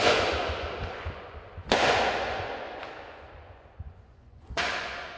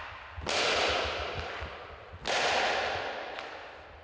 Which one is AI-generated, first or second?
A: first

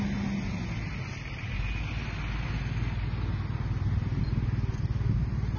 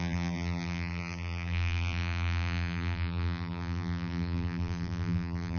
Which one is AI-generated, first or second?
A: second